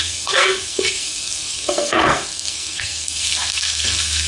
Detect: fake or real fake